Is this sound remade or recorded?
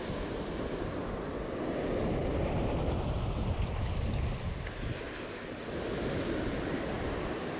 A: recorded